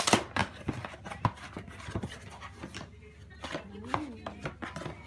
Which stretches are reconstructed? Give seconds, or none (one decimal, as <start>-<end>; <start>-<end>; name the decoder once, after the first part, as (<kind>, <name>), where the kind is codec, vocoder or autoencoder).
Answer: none